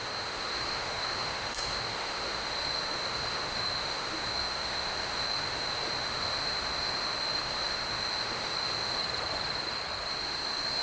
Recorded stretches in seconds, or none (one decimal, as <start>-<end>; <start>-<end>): 9.0-10.1